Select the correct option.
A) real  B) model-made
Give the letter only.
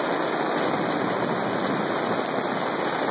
A